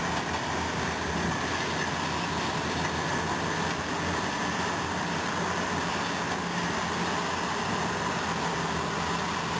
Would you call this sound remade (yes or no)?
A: no